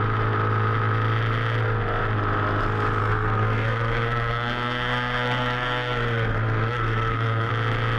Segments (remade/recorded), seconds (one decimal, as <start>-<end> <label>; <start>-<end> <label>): 0.0-3.0 recorded; 3.0-7.5 remade; 7.5-8.0 recorded